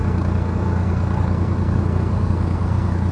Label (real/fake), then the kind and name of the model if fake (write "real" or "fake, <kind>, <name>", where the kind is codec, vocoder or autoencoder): fake, codec, SNAC